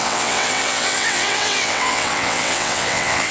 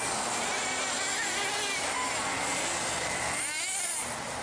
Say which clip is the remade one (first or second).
first